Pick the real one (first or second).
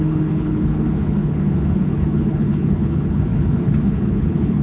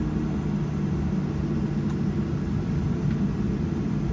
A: second